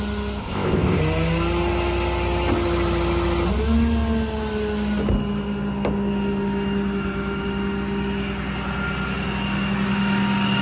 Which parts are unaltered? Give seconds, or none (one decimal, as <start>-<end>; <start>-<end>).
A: 0.0-0.4; 1.0-10.6